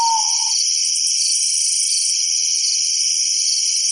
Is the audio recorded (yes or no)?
yes